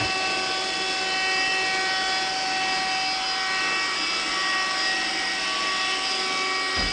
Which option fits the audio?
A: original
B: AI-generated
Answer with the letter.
A